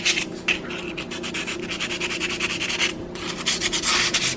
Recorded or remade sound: recorded